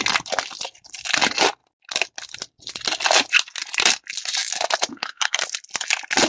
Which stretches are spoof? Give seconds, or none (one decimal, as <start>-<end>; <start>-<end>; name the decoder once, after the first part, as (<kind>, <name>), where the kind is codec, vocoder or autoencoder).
4.9-5.4 (codec, SNAC)